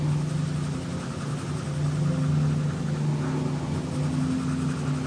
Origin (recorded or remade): recorded